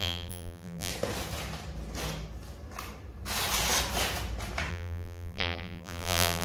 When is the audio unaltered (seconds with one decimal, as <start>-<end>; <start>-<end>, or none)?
0.9-4.7